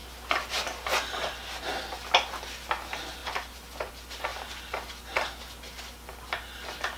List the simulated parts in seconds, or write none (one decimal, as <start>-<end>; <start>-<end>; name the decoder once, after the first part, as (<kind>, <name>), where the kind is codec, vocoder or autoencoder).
none